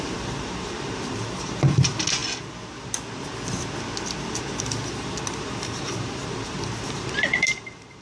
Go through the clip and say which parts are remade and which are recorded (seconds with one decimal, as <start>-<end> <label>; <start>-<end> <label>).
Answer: 0.0-2.2 remade; 2.2-4.9 recorded; 4.9-8.0 remade